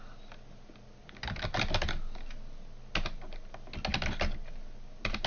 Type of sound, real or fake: real